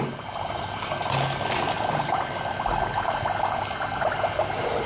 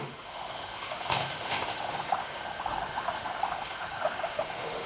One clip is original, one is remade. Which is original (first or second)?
first